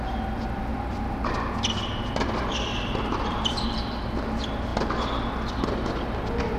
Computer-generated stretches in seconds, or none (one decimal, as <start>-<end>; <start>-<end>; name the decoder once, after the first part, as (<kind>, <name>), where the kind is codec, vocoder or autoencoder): 2.7-4.0 (vocoder, BigVGAN v2)